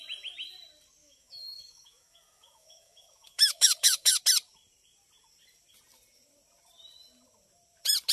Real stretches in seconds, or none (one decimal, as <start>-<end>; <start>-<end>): 0.0-1.0; 4.2-8.1